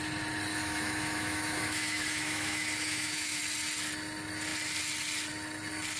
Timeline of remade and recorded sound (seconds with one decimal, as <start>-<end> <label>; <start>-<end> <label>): 0.0-0.5 recorded; 0.5-3.4 remade; 3.4-6.0 recorded